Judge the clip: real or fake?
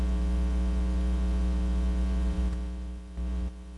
fake